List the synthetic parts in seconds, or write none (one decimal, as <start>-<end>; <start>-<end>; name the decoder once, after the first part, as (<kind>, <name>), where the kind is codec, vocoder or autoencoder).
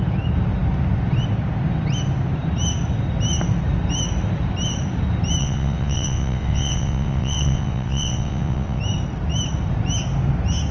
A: 5.4-8.8 (vocoder, WaveNeXt)